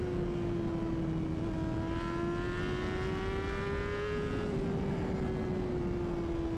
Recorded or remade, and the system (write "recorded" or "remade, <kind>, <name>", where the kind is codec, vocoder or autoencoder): recorded